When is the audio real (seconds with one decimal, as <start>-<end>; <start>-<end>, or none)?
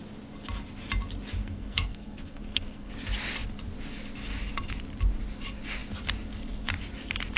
0.0-1.4; 2.9-7.4